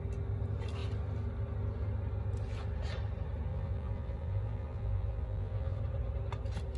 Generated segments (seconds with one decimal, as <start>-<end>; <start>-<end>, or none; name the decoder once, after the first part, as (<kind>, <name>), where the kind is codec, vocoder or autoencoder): 3.5-5.8 (vocoder, BigVGAN v2)